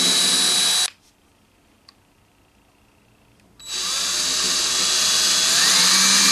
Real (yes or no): yes